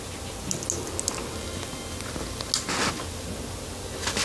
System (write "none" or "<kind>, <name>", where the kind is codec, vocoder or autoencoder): none